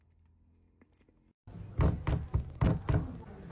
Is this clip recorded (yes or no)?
yes